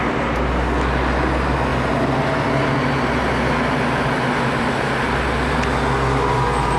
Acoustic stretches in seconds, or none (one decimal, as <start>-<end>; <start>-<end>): 0.0-6.8